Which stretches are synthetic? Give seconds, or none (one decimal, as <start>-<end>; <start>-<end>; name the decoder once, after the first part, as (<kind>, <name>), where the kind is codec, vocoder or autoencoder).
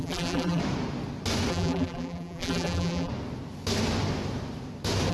0.0-0.6 (vocoder, BigVGAN v2); 1.5-3.1